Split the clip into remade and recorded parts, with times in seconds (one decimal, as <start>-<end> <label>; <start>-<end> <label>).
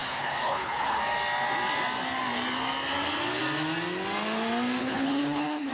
0.0-1.0 remade; 1.0-4.8 recorded; 4.8-5.7 remade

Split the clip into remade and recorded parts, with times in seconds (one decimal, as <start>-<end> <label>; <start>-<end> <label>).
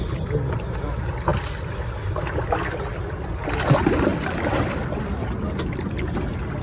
0.0-6.6 recorded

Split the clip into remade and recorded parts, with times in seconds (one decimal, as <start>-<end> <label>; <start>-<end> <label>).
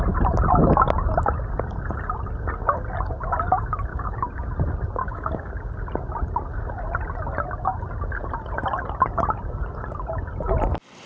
0.0-3.9 recorded; 3.9-4.5 remade; 4.5-5.0 recorded; 5.0-5.5 remade; 5.5-11.1 recorded